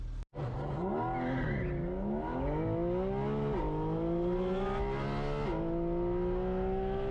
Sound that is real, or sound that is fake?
real